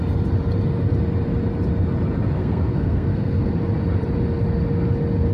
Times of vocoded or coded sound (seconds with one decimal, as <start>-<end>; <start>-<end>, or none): 2.4-3.5